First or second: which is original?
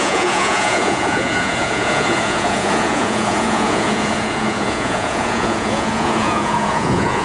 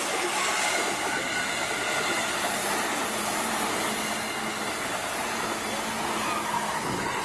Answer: second